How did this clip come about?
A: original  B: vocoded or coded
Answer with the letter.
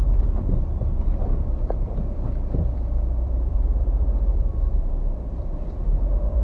B